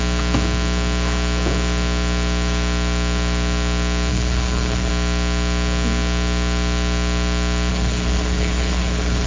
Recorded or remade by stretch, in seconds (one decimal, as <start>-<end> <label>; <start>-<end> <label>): 0.0-4.1 recorded; 4.1-4.9 remade; 4.9-7.7 recorded; 7.7-9.3 remade